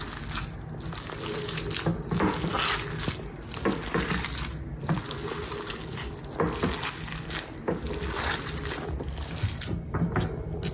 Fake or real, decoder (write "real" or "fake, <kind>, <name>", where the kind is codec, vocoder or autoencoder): real